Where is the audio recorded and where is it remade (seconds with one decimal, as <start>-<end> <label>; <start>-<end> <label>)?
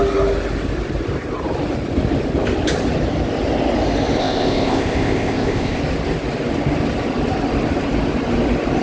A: 0.0-4.2 recorded; 4.2-5.8 remade; 5.8-8.8 recorded